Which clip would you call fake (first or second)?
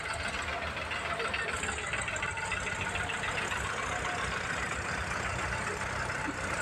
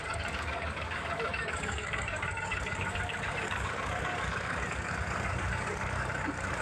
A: second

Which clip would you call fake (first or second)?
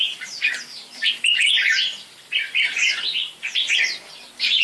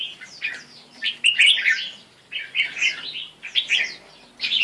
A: first